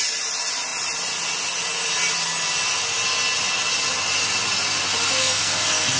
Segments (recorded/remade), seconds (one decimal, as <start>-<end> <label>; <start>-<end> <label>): 0.0-5.2 recorded; 5.2-6.0 remade

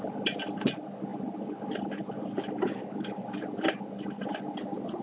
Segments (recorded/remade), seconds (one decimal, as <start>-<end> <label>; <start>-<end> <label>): 0.0-5.0 recorded

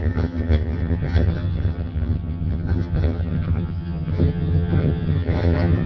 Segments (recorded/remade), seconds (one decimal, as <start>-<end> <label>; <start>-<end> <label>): 0.0-5.9 remade